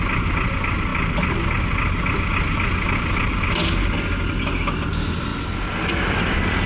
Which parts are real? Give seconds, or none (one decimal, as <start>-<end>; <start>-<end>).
0.0-6.7